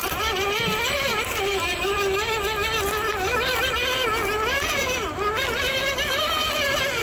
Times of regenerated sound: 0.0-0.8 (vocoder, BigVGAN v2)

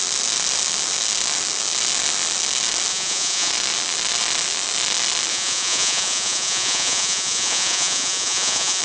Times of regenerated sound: 2.9-3.5 (vocoder, Vocos); 5.3-8.8

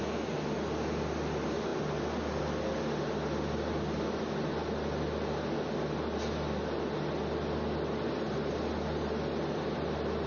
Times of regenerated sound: none